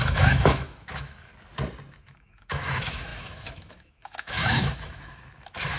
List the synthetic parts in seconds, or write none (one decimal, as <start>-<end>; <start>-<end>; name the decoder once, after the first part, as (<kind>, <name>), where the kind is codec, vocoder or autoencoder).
0.0-1.3 (autoencoder, DAC-VAE); 1.9-5.8